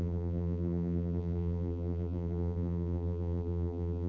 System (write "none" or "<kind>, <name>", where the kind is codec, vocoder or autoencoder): vocoder, BigVGAN v2